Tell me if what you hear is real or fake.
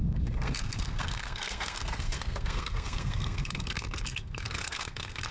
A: fake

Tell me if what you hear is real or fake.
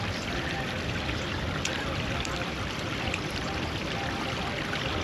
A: fake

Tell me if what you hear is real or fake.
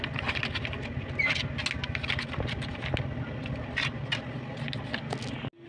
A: real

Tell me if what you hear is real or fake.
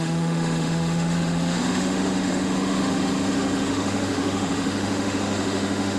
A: fake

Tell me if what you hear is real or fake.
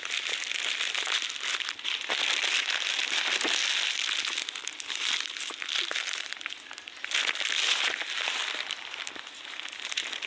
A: real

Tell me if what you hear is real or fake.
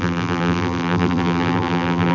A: fake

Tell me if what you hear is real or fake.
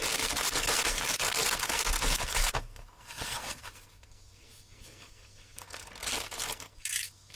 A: fake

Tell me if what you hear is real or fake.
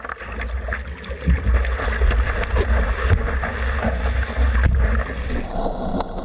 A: real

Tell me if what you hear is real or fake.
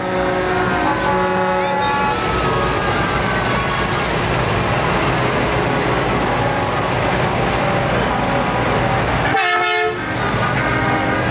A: real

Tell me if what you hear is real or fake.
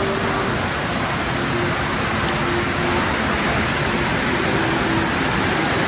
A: real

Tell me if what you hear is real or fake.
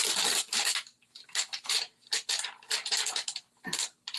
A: real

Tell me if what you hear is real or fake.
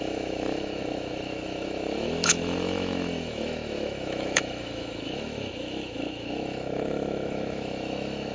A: fake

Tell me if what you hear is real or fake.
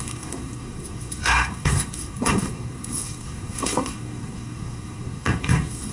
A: fake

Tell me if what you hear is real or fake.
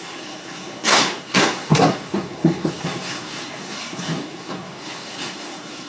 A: fake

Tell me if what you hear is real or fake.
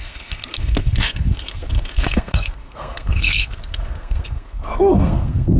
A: fake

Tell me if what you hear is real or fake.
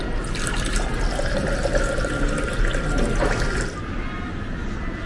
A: real